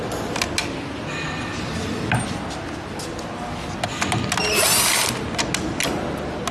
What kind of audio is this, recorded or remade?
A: recorded